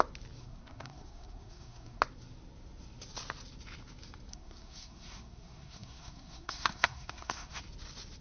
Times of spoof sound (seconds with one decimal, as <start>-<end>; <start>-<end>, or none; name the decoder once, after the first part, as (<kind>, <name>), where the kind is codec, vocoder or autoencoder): 0.4-2.0 (codec, SNAC); 4.3-7.6

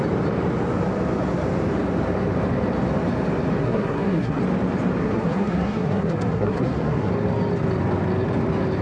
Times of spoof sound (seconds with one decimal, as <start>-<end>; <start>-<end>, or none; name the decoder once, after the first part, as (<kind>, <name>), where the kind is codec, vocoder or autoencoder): 3.6-4.4 (codec, SNAC); 5.0-7.1

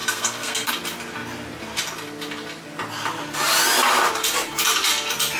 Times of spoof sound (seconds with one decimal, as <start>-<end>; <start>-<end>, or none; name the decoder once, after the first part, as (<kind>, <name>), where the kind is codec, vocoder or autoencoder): 0.0-0.7 (codec, SNAC)

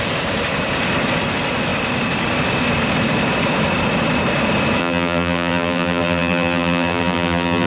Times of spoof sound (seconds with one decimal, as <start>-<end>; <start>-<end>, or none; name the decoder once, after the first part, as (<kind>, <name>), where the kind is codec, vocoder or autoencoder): 4.8-7.7 (vocoder, BigVGAN v2)

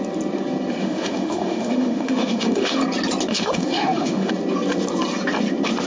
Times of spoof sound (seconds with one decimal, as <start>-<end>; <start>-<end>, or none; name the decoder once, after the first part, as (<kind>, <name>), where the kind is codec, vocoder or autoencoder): 0.8-2.8 (autoencoder, DAC-VAE); 3.3-4.3

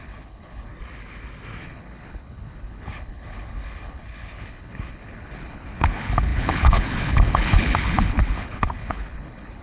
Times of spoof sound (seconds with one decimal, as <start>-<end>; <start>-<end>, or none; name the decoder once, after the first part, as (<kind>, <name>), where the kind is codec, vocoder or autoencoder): 0.0-0.7 (codec, HILCodec); 1.6-9.6